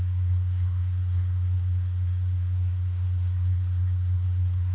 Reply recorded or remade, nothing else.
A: remade